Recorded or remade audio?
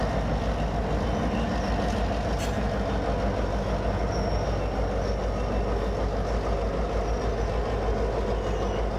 recorded